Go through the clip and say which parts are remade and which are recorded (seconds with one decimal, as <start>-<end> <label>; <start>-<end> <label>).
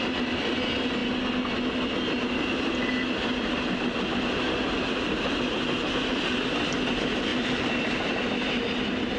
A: 0.0-9.2 recorded